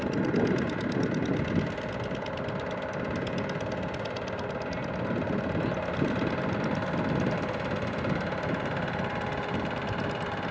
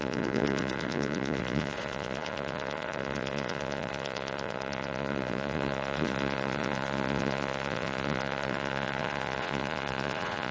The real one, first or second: first